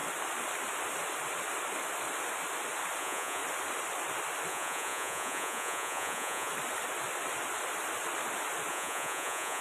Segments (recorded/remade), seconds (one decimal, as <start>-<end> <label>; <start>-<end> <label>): 0.0-3.0 recorded; 3.0-3.4 remade; 3.4-4.5 recorded; 4.5-6.5 remade; 6.5-8.7 recorded; 8.7-9.6 remade